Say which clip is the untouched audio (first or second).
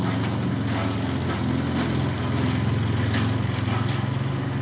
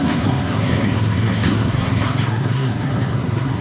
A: first